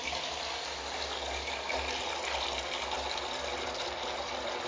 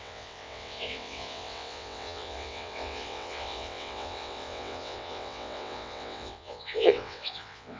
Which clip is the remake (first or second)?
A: second